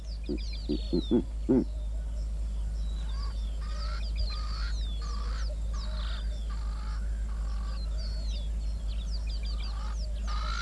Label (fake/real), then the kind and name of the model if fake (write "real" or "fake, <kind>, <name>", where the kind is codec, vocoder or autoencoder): real